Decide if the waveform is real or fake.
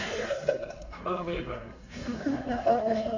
fake